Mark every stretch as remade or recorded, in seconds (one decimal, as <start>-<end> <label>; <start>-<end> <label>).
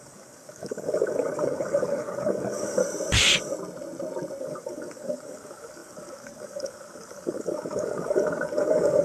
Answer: 0.0-2.8 remade; 2.8-4.4 recorded; 4.4-9.0 remade